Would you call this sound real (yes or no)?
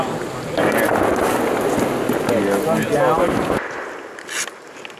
yes